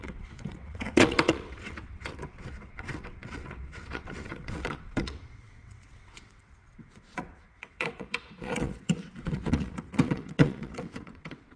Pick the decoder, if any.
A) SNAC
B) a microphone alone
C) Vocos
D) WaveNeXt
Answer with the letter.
D